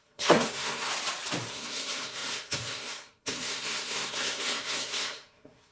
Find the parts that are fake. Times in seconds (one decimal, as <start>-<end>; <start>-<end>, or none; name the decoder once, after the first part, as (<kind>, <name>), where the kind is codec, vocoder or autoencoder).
0.0-0.9 (codec, SNAC); 1.5-5.7